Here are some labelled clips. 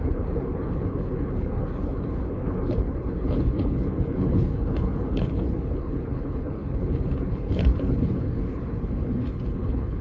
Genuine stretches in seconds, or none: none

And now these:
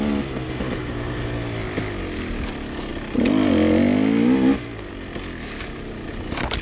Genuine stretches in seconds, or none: 0.0-6.6

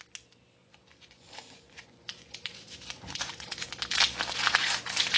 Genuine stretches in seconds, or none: 0.0-0.6; 3.7-5.2

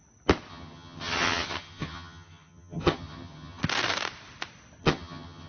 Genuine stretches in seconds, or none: 0.0-0.5; 3.6-4.8